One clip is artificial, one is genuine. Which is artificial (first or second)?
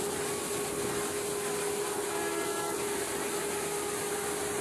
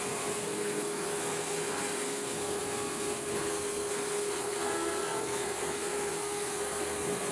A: second